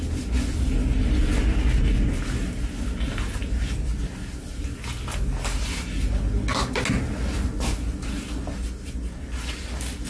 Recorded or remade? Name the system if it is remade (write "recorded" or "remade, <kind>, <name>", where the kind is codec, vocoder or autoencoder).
recorded